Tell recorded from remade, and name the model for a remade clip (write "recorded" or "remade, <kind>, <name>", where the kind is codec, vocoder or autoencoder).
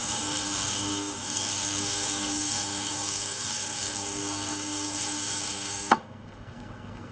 remade, codec, SNAC